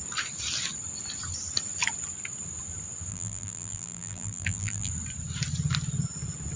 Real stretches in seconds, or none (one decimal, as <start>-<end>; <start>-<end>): 0.0-3.1; 4.9-6.6